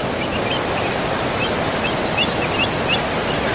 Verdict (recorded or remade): recorded